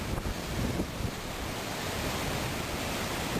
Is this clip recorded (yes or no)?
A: yes